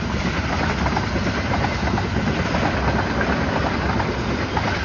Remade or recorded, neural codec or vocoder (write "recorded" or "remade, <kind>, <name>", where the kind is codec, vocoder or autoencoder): recorded